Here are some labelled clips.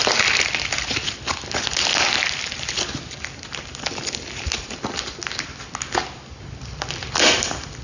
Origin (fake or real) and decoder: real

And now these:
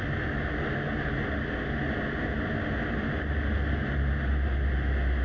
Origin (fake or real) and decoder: real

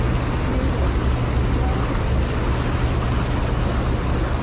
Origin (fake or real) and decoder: real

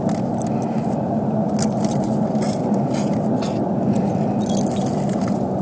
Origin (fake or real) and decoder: real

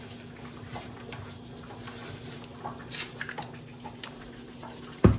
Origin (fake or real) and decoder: real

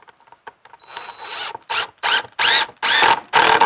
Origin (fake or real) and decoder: real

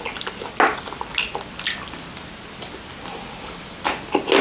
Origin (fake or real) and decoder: real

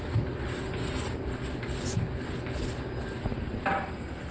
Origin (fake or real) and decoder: real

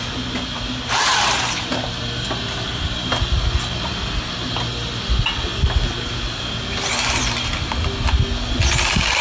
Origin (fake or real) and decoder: real